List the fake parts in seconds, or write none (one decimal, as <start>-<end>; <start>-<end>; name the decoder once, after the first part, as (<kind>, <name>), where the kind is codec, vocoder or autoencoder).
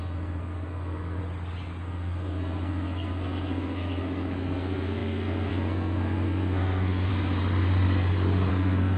0.0-1.2 (codec, SNAC); 1.8-7.1; 8.5-9.0